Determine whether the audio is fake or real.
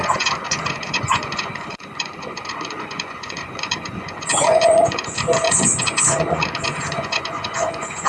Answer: fake